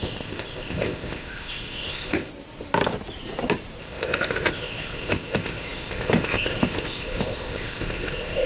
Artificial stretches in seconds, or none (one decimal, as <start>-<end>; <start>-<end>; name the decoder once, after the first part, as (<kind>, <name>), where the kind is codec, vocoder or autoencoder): 0.0-2.3 (codec, ZipCodec); 3.8-8.5